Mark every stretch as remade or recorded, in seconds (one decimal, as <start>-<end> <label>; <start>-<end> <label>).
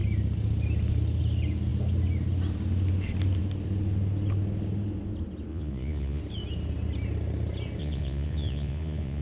0.0-5.5 recorded; 5.5-6.2 remade; 6.2-7.8 recorded; 7.8-9.2 remade